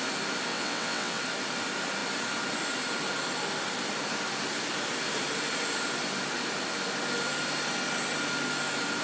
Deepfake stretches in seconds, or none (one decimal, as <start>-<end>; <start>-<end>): 0.5-1.2